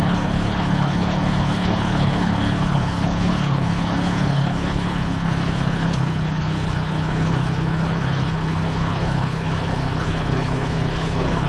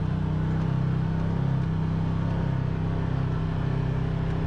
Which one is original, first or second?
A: second